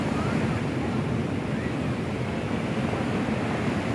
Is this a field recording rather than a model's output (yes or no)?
yes